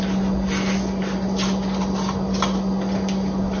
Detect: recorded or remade recorded